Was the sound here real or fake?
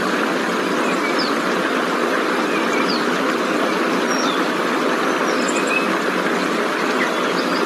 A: real